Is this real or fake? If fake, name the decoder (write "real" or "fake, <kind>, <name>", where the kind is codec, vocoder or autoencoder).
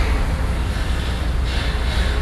real